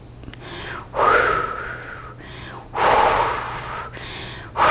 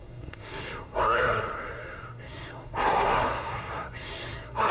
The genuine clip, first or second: first